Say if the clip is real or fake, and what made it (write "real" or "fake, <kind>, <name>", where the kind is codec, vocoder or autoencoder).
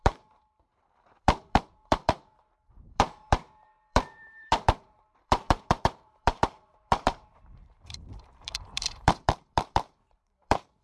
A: fake, vocoder, BigVGAN v2